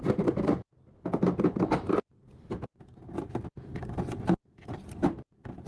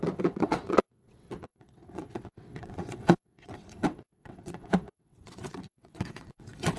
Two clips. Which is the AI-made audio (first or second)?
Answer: second